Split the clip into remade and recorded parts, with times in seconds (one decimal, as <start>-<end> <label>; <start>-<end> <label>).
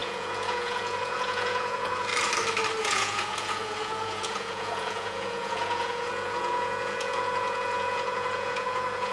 0.0-2.1 remade; 2.1-2.8 recorded; 2.8-9.1 remade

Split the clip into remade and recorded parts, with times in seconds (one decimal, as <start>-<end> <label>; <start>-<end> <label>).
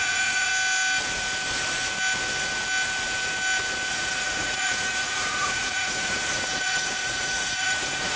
0.0-0.5 remade; 0.5-3.9 recorded; 3.9-8.2 remade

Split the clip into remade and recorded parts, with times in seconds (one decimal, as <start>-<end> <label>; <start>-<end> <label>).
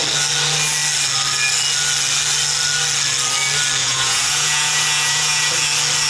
0.0-3.8 recorded; 3.8-5.5 remade; 5.5-6.1 recorded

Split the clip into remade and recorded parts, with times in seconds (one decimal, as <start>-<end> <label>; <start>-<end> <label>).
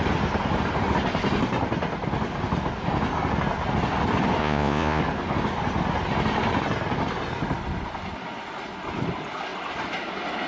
0.0-4.4 recorded; 4.4-5.0 remade; 5.0-10.5 recorded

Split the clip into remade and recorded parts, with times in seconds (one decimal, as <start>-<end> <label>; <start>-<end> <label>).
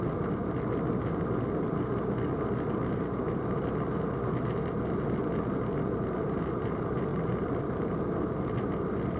0.0-9.2 recorded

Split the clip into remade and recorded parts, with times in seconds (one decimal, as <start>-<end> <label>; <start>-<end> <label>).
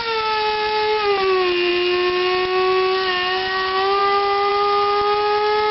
0.0-5.7 recorded